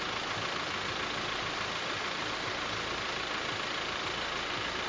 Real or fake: real